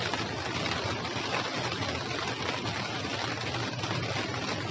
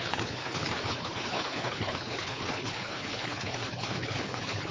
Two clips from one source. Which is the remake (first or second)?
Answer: second